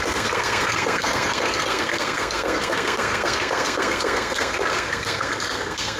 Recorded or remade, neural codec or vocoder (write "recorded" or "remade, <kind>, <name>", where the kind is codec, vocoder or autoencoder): remade, codec, SNAC